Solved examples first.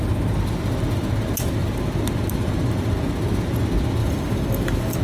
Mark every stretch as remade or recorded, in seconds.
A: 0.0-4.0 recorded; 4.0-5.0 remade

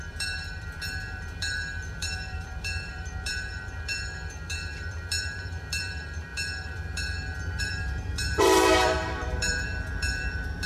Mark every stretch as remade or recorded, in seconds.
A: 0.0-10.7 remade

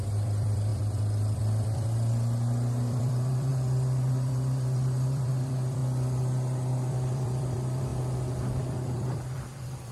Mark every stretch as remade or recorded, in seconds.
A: 0.0-5.8 remade; 5.8-6.9 recorded; 6.9-7.9 remade; 7.9-8.6 recorded; 8.6-9.9 remade

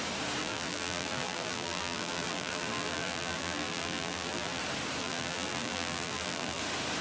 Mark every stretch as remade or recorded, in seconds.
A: 0.0-0.4 recorded; 0.4-4.6 remade; 4.6-5.0 recorded; 5.0-6.6 remade; 6.6-7.0 recorded